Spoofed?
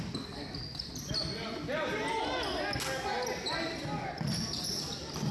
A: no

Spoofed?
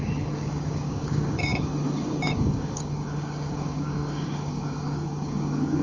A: yes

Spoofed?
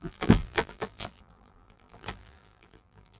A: yes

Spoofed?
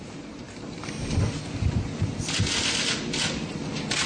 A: no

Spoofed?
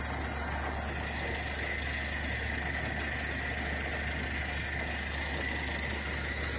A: no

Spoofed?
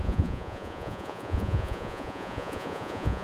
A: yes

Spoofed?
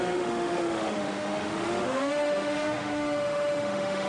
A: yes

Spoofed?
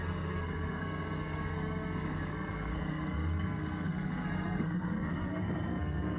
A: yes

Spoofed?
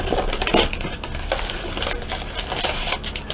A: no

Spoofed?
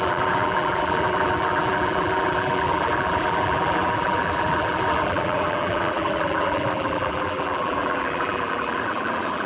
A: yes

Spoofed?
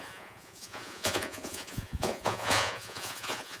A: yes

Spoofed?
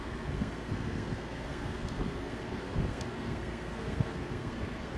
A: yes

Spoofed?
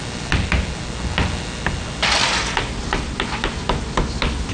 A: no